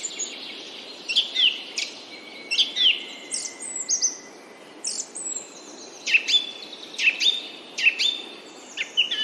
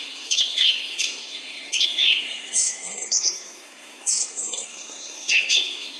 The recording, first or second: first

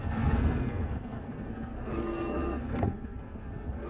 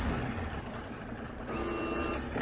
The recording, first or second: second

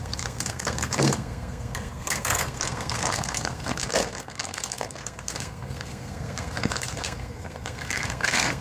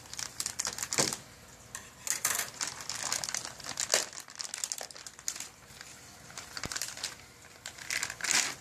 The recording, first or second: second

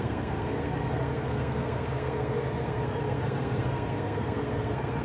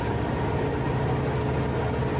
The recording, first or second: second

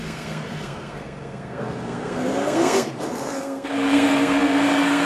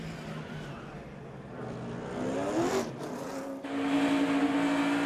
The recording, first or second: second